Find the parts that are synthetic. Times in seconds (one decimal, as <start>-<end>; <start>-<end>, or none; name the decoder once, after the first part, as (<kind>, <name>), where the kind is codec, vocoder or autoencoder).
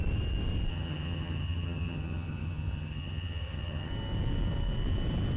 0.7-3.9 (vocoder, HiFi-GAN)